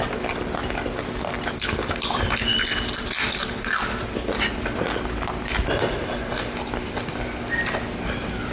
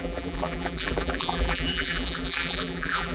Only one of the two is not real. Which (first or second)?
second